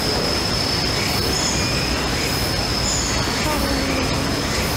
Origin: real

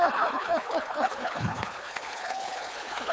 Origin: fake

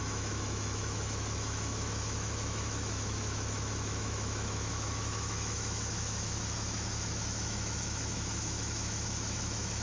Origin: fake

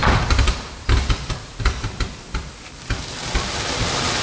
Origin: fake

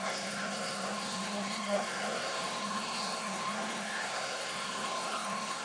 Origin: fake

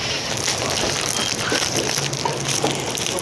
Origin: real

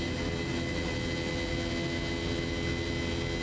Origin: real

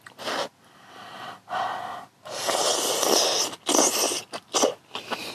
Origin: real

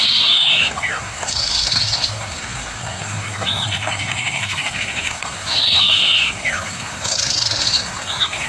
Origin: fake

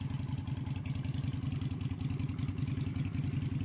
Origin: real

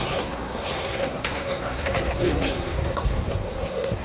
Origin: fake